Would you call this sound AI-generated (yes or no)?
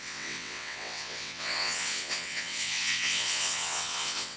yes